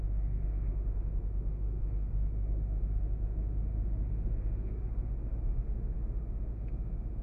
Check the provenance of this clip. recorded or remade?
remade